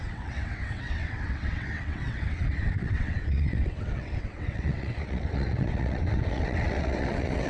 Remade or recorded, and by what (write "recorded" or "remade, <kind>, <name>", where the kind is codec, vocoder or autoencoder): remade, vocoder, WaveNeXt